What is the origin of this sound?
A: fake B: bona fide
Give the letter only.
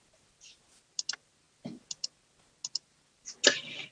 B